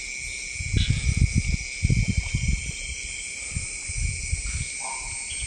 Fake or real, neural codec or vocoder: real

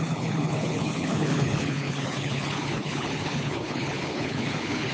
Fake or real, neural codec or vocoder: fake, codec, HILCodec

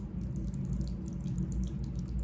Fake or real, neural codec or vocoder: real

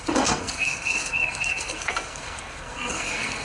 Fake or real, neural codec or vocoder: fake, codec, SNAC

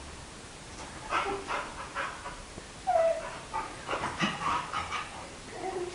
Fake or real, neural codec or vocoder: fake, vocoder, BigVGAN v2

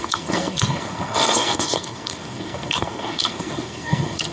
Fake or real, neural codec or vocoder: fake, codec, SNAC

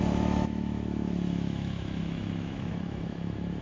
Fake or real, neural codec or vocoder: fake, autoencoder, DAC-VAE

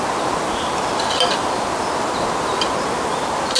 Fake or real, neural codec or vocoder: real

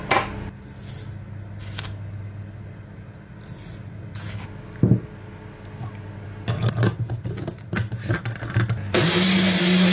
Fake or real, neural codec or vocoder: real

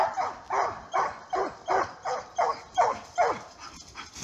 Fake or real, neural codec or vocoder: real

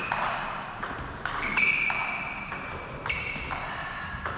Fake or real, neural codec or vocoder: real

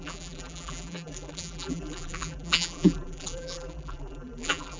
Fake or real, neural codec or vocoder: fake, vocoder, BigVGAN v2